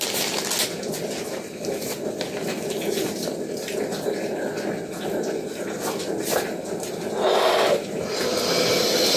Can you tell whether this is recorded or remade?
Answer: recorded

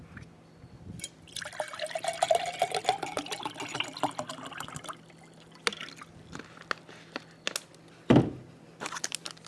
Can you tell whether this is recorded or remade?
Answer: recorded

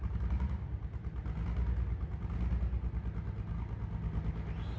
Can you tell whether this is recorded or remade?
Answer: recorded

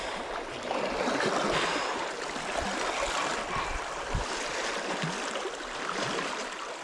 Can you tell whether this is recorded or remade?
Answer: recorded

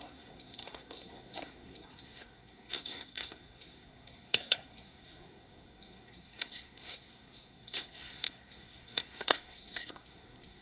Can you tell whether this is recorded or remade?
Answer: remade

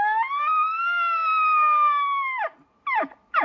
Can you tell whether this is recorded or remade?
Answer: recorded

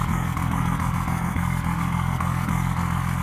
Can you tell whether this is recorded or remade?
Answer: remade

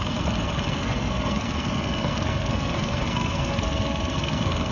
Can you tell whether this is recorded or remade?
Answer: remade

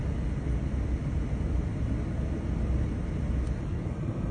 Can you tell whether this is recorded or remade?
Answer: recorded